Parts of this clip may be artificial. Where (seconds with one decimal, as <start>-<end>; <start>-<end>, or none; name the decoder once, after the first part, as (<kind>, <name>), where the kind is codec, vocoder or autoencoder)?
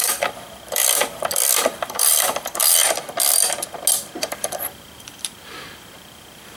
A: 0.0-2.6 (vocoder, BigVGAN v2); 4.2-6.6